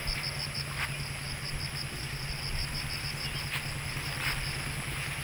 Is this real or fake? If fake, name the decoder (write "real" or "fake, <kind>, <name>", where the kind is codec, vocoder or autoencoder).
real